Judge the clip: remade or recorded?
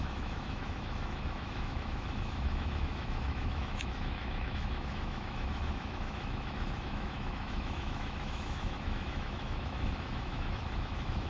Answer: remade